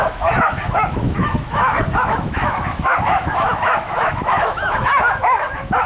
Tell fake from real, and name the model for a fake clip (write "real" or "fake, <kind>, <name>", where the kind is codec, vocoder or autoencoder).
fake, autoencoder, DAC-VAE